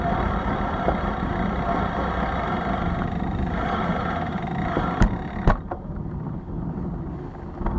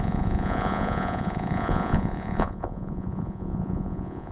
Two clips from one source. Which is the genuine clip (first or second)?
first